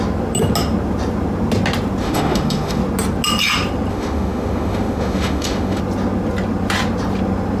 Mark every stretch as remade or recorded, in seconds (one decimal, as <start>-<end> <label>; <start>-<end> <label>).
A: 0.0-2.0 recorded; 2.0-2.8 remade; 2.8-3.9 recorded; 3.9-5.8 remade; 5.8-7.6 recorded